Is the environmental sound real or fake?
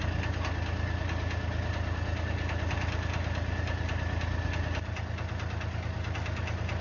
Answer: real